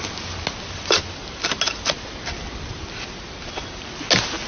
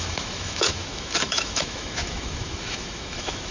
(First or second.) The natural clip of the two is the first